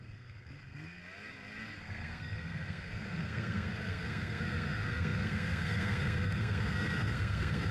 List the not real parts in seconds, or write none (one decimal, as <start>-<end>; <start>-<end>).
0.0-1.0; 1.8-7.7